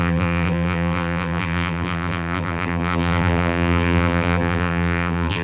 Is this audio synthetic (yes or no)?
yes